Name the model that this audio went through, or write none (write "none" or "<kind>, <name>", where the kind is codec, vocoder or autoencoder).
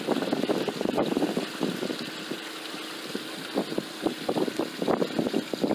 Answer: none